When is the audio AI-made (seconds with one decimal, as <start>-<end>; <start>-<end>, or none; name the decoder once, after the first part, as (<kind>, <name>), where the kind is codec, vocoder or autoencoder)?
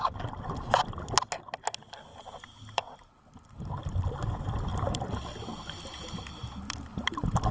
none